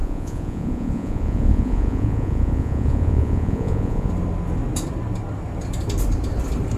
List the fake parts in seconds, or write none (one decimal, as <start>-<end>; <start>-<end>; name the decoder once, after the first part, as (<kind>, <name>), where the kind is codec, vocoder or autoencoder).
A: 0.0-4.1 (vocoder, Vocos)